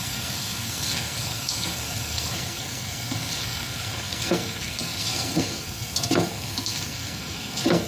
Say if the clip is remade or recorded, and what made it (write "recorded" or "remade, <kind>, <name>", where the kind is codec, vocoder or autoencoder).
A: remade, codec, SNAC